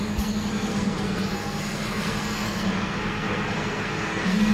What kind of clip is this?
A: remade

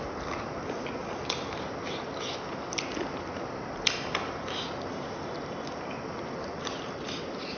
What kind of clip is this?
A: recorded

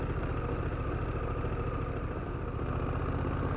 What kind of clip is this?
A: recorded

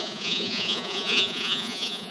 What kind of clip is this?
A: remade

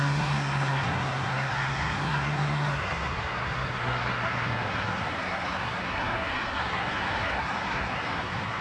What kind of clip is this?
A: remade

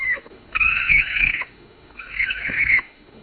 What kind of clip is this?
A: remade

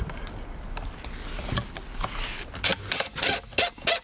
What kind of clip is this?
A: recorded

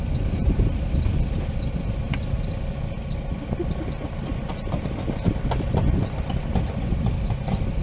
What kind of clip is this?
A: recorded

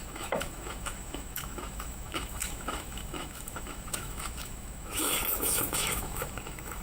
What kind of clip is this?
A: remade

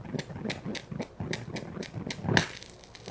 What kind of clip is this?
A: recorded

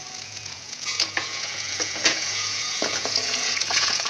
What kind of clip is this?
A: remade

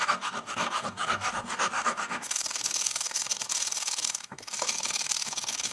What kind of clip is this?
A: remade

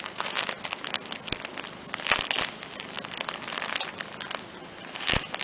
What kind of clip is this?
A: recorded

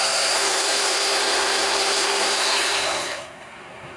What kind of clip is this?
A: remade